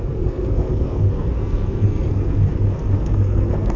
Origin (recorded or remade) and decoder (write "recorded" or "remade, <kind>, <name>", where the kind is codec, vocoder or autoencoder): remade, codec, SNAC